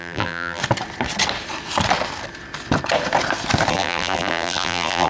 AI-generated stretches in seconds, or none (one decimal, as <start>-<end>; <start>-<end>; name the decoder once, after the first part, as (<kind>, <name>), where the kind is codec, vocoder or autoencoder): 0.0-0.6 (vocoder, BigVGAN v2); 3.7-5.1